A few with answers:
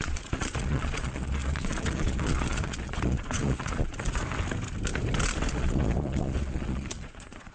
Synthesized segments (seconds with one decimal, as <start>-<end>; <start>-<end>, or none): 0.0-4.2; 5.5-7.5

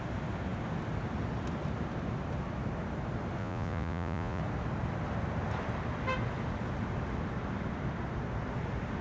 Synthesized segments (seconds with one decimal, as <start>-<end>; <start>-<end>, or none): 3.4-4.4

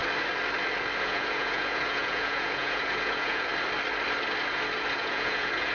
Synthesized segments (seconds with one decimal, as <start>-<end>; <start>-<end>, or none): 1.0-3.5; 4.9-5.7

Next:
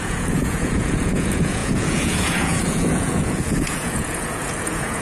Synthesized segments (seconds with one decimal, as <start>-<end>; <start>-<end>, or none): 0.0-5.0